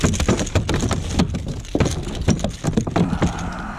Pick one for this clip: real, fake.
real